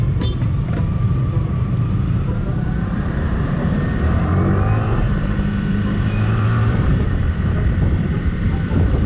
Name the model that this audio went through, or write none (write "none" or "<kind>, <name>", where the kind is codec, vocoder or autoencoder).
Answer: vocoder, BigVGAN v2